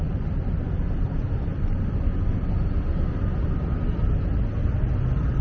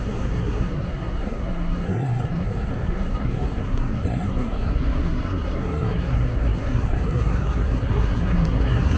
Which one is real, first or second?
first